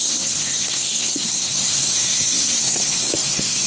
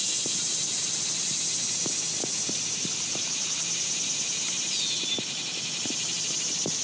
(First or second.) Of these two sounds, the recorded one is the second